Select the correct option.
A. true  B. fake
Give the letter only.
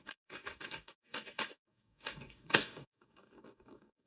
B